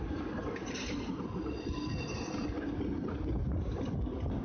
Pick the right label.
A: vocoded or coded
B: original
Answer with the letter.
B